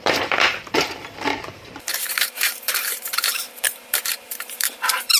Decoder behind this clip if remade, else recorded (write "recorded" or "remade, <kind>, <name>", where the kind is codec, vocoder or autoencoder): remade, vocoder, BigVGAN v2